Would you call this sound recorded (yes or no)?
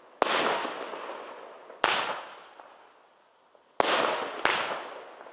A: yes